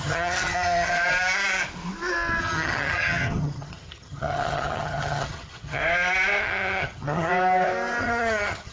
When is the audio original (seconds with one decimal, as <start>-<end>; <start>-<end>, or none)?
0.9-2.4; 5.8-6.4; 7.3-8.0